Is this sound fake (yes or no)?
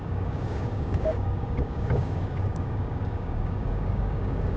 yes